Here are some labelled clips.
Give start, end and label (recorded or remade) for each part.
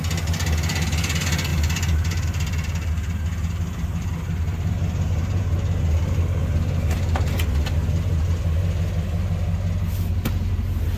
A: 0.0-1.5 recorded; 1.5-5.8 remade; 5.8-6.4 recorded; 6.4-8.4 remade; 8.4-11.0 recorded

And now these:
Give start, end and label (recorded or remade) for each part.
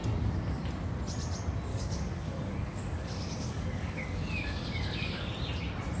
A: 0.0-1.7 recorded; 1.7-5.3 remade; 5.3-6.0 recorded